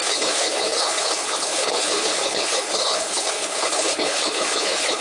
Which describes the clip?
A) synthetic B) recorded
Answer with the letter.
A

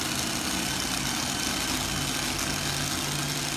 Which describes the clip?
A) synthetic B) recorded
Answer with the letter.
B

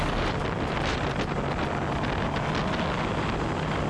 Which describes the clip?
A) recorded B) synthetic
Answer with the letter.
A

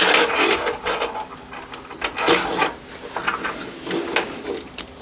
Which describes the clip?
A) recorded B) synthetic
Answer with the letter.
A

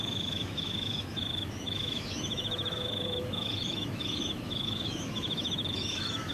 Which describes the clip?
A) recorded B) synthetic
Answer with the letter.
B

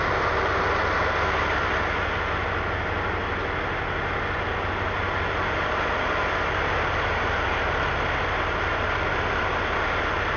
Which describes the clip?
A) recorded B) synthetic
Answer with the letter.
B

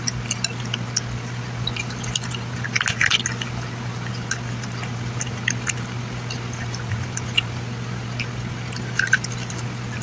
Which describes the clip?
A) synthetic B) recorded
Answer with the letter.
B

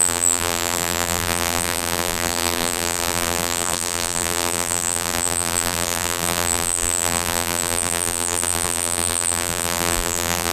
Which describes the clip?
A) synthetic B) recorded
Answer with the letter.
A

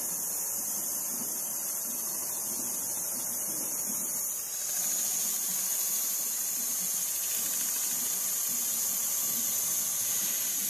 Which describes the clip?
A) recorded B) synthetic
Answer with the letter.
A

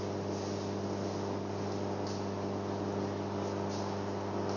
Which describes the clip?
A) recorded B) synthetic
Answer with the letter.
A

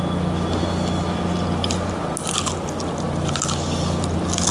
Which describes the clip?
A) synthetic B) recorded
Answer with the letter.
B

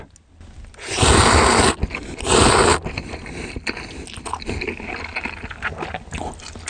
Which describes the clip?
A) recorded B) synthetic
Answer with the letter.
A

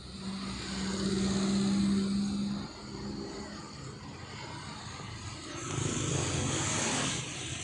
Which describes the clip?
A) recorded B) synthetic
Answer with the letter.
A